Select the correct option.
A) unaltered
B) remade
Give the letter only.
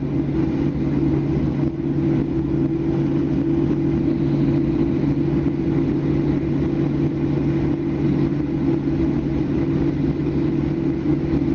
A